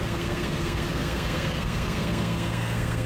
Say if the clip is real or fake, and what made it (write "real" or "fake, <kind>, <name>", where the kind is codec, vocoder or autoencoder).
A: fake, codec, SNAC